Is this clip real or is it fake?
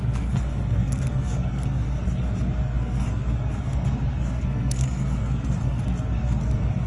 fake